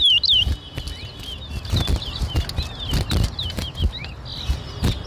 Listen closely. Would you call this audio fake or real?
real